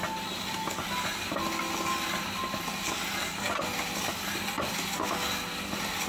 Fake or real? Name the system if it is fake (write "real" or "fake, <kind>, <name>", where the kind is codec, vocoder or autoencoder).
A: real